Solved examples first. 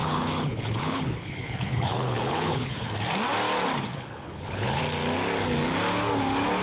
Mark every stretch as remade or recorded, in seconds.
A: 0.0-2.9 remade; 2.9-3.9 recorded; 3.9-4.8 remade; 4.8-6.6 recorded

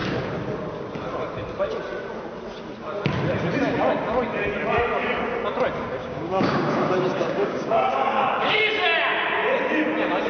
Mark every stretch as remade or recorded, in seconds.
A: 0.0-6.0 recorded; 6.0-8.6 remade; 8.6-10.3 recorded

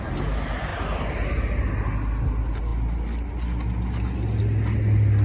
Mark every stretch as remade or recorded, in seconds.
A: 0.0-5.2 recorded

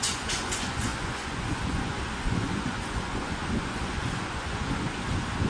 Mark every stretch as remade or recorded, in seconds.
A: 0.0-5.5 remade

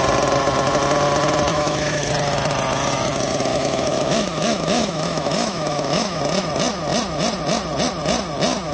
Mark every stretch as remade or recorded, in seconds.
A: 0.0-1.5 recorded; 1.5-2.1 remade; 2.1-3.5 recorded; 3.5-6.2 remade; 6.2-8.7 recorded

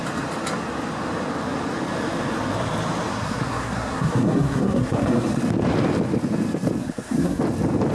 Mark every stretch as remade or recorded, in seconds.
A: 0.0-3.1 recorded; 3.1-5.4 remade; 5.4-6.8 recorded; 6.8-7.4 remade; 7.4-7.9 recorded

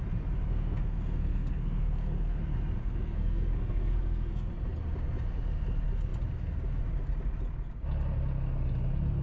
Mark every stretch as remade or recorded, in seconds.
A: 0.0-0.5 recorded; 0.5-2.4 remade; 2.4-2.8 recorded; 2.8-4.5 remade; 4.5-9.2 recorded

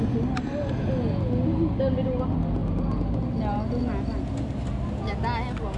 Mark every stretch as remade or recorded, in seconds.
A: 0.0-5.8 recorded